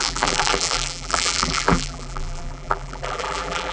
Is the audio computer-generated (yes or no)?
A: yes